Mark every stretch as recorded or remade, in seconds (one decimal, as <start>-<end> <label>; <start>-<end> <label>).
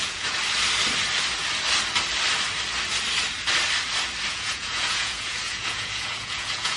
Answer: 0.0-0.4 remade; 0.4-4.3 recorded; 4.3-6.8 remade